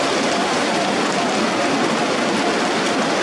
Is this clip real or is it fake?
real